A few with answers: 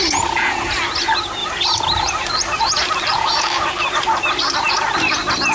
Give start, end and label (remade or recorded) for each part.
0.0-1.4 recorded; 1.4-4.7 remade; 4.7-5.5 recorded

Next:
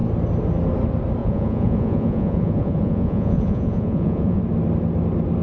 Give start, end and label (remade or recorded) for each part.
0.0-1.2 recorded; 1.2-4.4 remade; 4.4-5.4 recorded

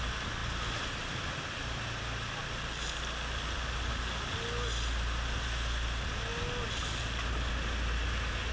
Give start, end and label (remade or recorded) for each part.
0.0-8.5 recorded

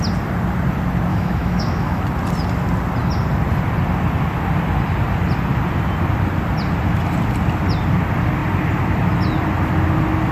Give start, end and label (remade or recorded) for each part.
0.0-1.1 recorded; 1.1-2.0 remade; 2.0-10.3 recorded

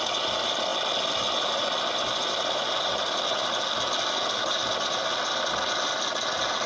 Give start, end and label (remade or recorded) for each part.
0.0-6.7 recorded

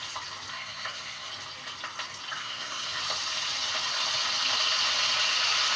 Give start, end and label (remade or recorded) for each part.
0.0-0.5 recorded; 0.5-1.3 remade; 1.3-2.4 recorded; 2.4-3.0 remade; 3.0-5.8 recorded